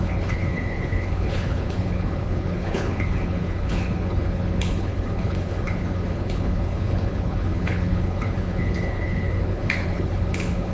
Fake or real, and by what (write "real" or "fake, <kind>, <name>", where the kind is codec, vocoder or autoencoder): fake, codec, HILCodec